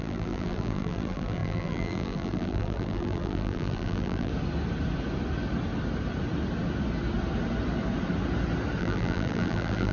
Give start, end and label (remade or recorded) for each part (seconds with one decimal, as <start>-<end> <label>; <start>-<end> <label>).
0.0-4.3 remade; 4.3-8.8 recorded; 8.8-9.9 remade